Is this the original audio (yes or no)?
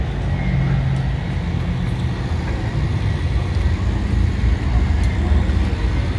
yes